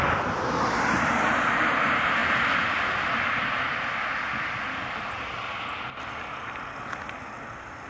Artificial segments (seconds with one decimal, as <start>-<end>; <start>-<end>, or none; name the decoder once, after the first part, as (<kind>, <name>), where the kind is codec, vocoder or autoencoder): none